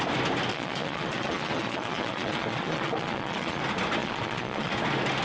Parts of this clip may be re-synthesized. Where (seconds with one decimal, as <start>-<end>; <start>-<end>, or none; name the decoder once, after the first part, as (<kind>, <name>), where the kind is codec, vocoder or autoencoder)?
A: 0.5-3.6 (vocoder, Vocos); 4.0-4.7